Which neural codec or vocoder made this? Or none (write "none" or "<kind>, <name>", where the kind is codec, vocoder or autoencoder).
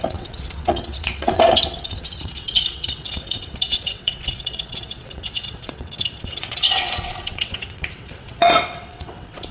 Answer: vocoder, WaveNeXt